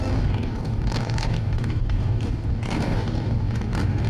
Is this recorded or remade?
remade